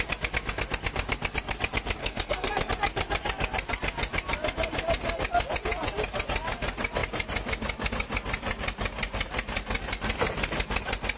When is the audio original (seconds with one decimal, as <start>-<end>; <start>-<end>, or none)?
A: 0.0-2.0; 2.7-11.2